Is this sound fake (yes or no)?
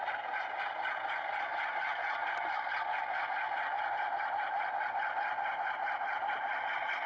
no